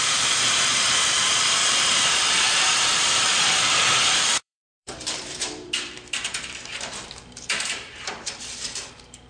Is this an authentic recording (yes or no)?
no